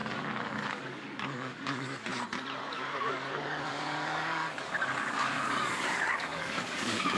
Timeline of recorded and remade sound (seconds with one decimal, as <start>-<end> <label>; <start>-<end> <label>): 0.0-2.1 remade; 2.1-2.7 recorded; 2.7-7.2 remade